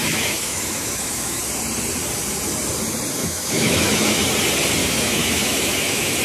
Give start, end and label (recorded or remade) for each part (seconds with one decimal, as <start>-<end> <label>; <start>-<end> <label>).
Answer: 0.0-1.4 remade; 1.4-3.2 recorded; 3.2-4.2 remade; 4.2-4.8 recorded; 4.8-6.2 remade